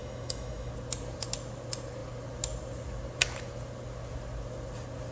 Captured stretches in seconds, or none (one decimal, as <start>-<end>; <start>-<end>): 0.7-5.1